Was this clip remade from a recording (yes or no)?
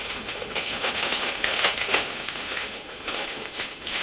yes